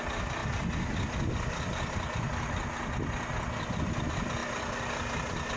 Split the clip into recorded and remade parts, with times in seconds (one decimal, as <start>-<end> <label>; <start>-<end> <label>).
0.0-5.6 recorded